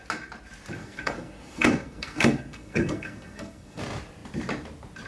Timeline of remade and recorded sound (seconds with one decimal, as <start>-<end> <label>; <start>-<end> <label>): 0.0-0.8 recorded; 0.8-3.8 remade; 3.8-5.1 recorded

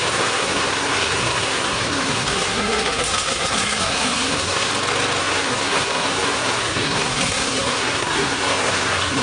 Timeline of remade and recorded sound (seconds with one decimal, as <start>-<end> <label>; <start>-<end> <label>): 0.0-4.7 remade; 4.7-5.2 recorded; 5.2-9.2 remade

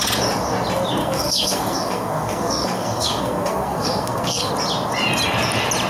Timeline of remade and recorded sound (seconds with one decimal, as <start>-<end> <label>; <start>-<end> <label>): 0.0-1.0 recorded; 1.0-4.5 remade; 4.5-5.9 recorded

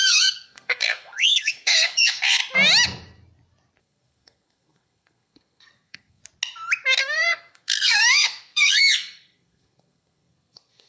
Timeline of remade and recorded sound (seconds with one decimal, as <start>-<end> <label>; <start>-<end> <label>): 0.0-2.4 remade; 2.4-3.8 recorded; 3.8-6.2 remade; 6.2-7.0 recorded; 7.0-10.9 remade

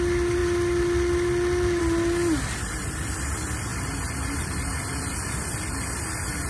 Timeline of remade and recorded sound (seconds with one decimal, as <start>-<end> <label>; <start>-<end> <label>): 0.0-6.5 recorded